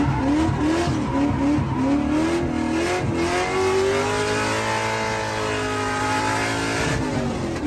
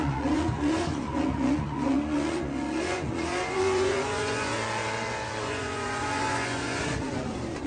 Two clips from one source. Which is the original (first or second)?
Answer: first